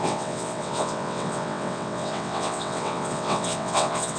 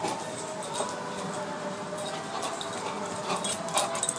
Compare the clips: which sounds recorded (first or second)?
second